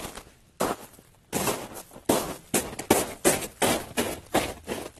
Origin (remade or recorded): recorded